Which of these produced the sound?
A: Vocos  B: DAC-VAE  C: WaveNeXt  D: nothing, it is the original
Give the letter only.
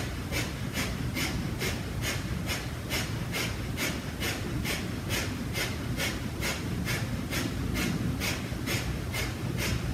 D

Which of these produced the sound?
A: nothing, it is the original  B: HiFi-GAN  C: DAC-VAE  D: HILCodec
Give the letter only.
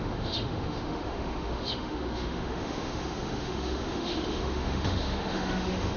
C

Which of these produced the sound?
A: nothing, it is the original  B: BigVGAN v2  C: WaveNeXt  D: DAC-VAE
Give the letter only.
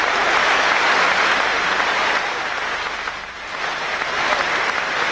A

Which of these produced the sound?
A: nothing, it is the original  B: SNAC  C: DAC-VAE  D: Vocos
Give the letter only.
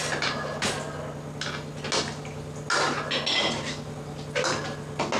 A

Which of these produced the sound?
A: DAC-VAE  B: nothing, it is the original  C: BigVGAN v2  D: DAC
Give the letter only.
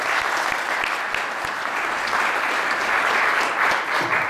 B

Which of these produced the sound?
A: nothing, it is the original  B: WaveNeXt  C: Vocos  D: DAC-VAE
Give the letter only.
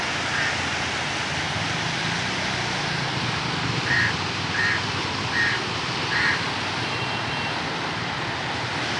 A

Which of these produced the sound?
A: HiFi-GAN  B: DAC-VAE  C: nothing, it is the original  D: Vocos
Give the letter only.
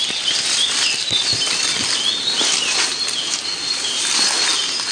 C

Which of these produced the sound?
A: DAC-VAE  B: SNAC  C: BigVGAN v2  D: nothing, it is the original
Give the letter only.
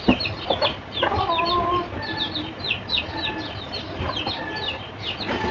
D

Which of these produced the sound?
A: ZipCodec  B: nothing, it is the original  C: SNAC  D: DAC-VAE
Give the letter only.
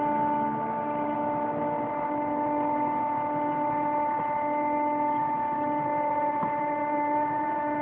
B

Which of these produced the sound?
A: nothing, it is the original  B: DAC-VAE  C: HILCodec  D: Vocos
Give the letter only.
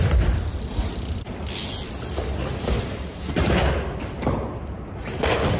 A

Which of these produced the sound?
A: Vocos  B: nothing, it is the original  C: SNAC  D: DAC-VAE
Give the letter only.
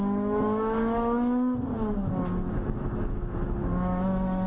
D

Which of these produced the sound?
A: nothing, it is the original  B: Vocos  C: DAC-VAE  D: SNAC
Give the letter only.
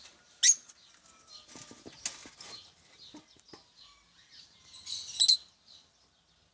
A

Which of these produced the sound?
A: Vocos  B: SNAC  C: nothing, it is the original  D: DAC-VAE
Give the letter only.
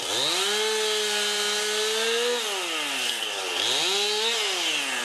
C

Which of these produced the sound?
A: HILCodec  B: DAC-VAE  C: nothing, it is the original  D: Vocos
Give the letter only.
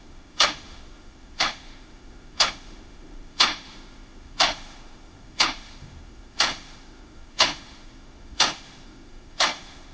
B